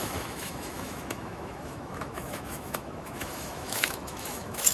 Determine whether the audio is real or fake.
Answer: fake